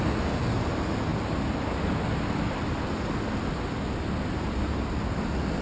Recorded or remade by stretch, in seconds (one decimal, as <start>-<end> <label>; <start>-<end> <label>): 0.0-5.6 recorded